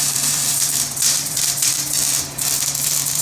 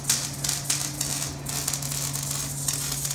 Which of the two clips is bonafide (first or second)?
second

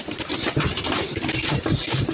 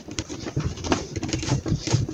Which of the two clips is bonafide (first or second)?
first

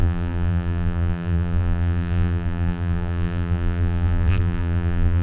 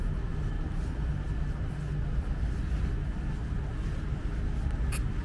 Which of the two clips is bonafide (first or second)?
second